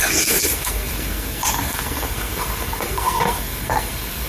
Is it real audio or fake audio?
fake